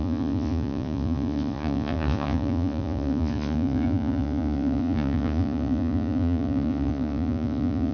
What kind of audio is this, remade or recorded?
remade